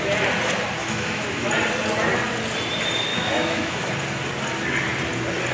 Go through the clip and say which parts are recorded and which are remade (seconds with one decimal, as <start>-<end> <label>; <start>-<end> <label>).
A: 0.0-0.8 recorded; 0.8-1.5 remade; 1.5-3.1 recorded; 3.1-3.9 remade; 3.9-5.5 recorded

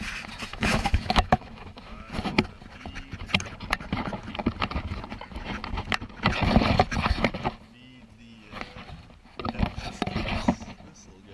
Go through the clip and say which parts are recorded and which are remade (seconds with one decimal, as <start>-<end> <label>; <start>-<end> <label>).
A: 0.0-0.5 recorded; 0.5-2.1 remade; 2.1-11.3 recorded

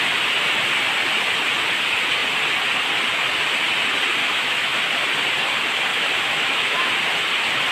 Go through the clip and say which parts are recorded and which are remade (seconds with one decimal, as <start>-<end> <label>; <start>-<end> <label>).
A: 0.0-4.2 recorded; 4.2-4.8 remade; 4.8-5.9 recorded; 5.9-6.9 remade; 6.9-7.7 recorded

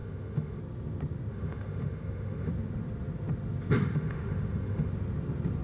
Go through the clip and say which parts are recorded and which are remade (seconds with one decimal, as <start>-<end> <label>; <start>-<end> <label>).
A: 0.0-0.6 remade; 0.6-1.3 recorded; 1.3-2.5 remade; 2.5-3.8 recorded; 3.8-4.9 remade; 4.9-5.6 recorded

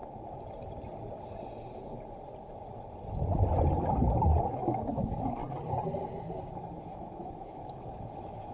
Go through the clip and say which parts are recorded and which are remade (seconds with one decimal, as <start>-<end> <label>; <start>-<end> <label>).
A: 0.0-4.5 recorded; 4.5-5.4 remade; 5.4-6.8 recorded; 6.8-8.5 remade

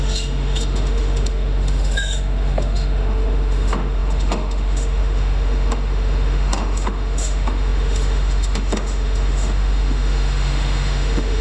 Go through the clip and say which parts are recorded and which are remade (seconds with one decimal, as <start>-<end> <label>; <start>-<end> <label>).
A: 0.0-11.4 remade

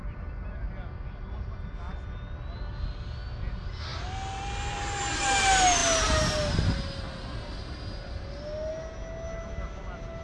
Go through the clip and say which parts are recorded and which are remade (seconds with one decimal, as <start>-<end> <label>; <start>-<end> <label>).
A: 0.0-10.2 recorded